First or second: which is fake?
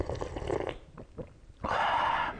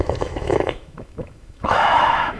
second